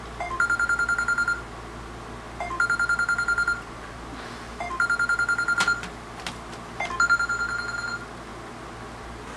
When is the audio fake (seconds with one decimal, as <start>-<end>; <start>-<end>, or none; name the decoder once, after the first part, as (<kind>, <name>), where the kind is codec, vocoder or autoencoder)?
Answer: none